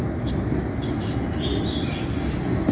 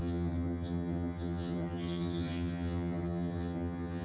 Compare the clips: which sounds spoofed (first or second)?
second